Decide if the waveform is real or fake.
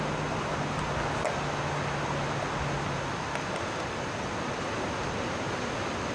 real